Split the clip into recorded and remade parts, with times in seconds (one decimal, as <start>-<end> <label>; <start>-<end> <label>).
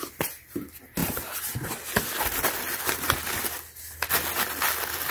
0.0-5.1 recorded